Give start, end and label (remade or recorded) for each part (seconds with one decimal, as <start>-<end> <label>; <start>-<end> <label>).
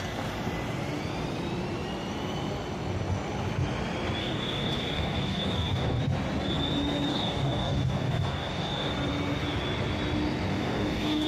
0.0-4.2 recorded; 4.2-6.0 remade; 6.0-7.1 recorded; 7.1-8.9 remade; 8.9-10.5 recorded; 10.5-11.3 remade